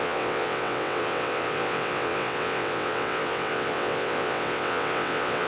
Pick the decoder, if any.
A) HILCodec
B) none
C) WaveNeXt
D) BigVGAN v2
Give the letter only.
C